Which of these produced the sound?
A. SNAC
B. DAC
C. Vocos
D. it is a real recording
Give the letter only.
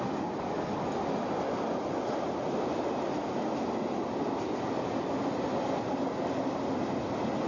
D